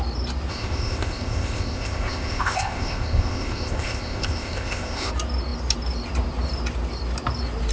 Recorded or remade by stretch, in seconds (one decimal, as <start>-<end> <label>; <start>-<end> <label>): 0.0-0.5 recorded; 0.5-5.1 remade; 5.1-7.7 recorded